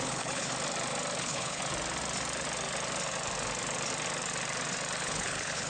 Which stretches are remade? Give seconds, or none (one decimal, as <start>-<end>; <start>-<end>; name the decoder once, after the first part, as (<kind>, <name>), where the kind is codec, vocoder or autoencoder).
0.0-0.5 (codec, HILCodec); 1.2-1.6; 5.0-5.7